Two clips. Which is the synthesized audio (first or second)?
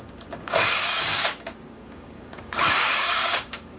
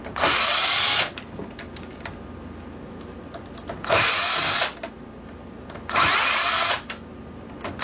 first